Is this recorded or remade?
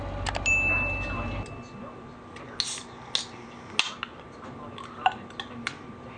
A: recorded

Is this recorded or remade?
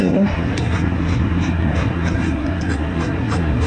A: remade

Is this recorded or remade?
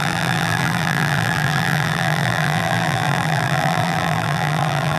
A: remade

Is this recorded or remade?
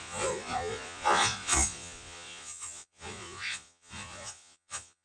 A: remade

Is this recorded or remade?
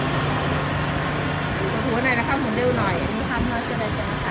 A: recorded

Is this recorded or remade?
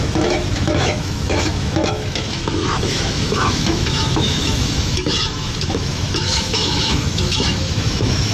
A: remade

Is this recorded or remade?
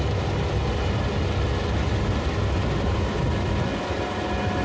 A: recorded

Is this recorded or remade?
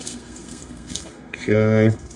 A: remade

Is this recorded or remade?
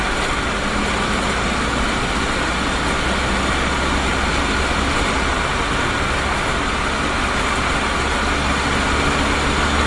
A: recorded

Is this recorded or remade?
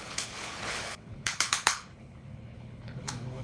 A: remade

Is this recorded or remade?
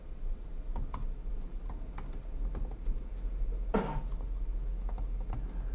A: recorded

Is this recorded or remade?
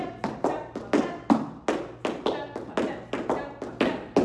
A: recorded